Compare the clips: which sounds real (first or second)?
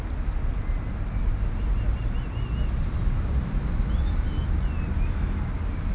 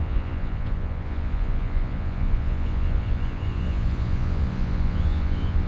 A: first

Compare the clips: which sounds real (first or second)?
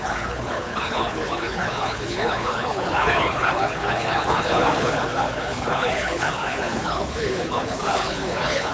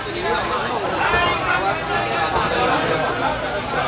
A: second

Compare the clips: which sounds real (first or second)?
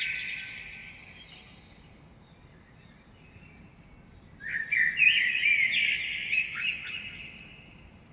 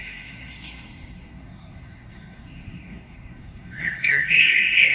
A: first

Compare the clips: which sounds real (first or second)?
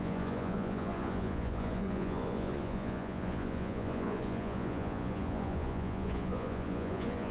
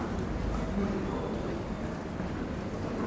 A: second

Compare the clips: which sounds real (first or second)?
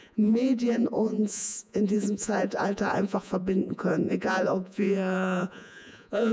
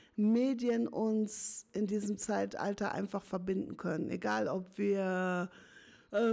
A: second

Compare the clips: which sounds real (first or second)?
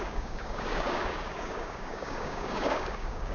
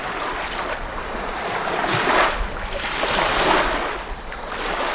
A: second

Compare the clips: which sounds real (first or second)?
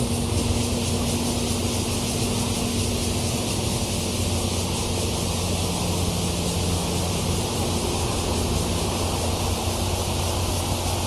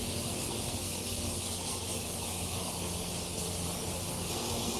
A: first